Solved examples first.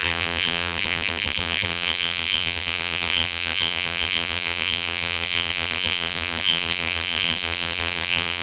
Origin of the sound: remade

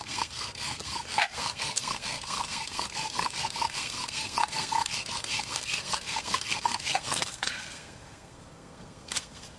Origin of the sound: remade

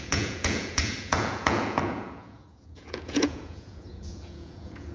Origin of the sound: remade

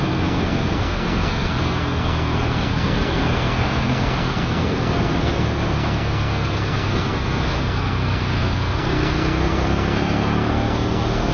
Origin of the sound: remade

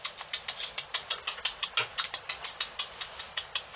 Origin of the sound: recorded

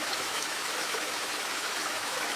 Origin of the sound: remade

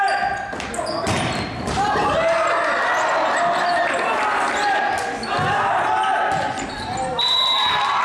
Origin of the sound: recorded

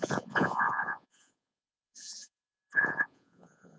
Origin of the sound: remade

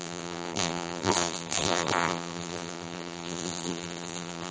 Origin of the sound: remade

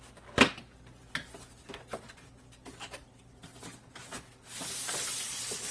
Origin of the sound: recorded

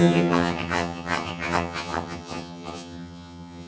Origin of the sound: remade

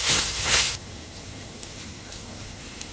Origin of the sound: remade